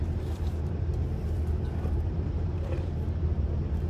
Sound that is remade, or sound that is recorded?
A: remade